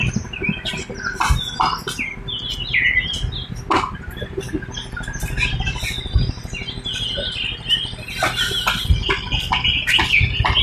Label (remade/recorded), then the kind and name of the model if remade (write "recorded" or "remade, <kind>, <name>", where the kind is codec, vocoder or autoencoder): recorded